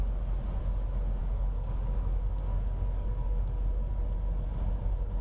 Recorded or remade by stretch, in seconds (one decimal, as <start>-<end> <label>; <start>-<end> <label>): 0.0-1.2 recorded; 1.2-3.9 remade; 3.9-5.2 recorded